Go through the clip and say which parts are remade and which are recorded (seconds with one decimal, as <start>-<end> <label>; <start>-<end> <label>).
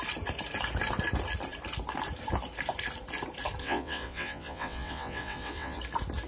0.0-3.6 recorded; 3.6-5.8 remade; 5.8-6.3 recorded